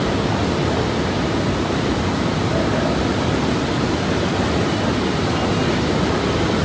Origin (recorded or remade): recorded